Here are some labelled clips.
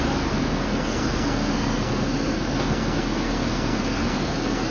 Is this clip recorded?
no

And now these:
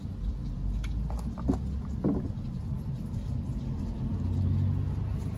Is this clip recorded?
yes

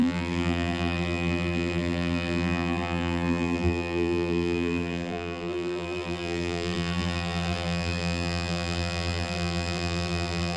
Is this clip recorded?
no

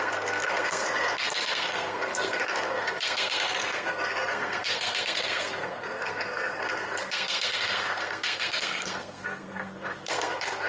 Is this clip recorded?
no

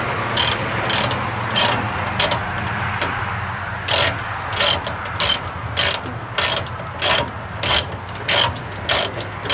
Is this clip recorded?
yes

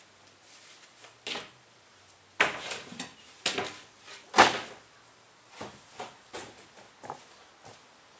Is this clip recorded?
yes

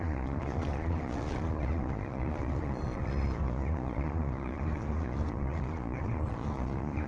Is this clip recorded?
no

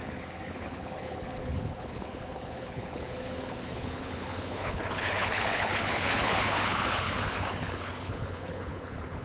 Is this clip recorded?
no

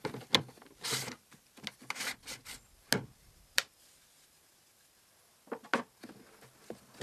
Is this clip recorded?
yes